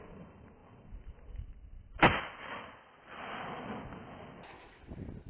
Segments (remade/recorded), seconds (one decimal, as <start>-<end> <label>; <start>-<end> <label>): 0.0-5.3 recorded